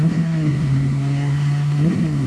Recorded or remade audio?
remade